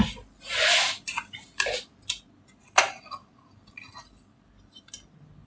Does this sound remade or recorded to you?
recorded